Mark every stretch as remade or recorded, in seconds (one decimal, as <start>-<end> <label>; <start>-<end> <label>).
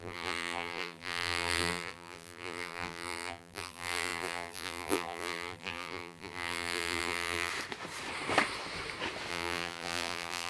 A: 0.0-7.5 remade; 7.5-9.3 recorded; 9.3-10.5 remade